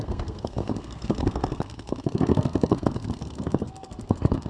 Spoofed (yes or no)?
yes